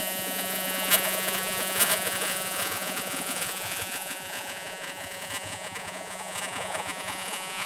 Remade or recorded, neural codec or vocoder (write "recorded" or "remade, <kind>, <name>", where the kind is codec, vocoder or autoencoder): remade, vocoder, Vocos